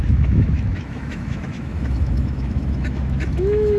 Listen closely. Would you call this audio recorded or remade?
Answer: remade